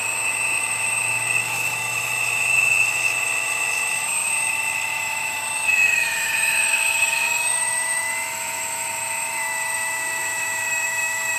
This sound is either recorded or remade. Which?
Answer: remade